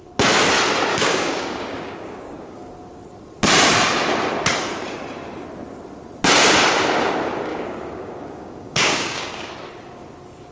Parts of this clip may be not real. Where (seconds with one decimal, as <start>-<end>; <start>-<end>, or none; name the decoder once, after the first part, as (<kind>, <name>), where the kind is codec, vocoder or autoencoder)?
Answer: 0.9-2.7 (codec, DAC); 7.5-9.5